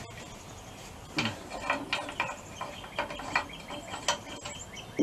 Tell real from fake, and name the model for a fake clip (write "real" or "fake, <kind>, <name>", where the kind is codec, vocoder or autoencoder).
real